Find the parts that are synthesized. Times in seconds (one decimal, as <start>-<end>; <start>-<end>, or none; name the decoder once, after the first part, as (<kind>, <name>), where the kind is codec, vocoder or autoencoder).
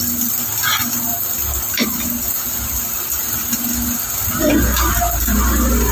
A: none